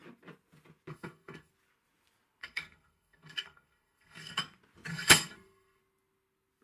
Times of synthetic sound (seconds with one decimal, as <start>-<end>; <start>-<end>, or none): 0.9-1.5; 2.4-4.4; 4.9-5.8